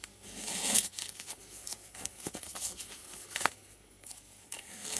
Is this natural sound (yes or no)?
no